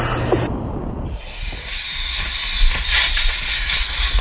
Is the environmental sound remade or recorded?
recorded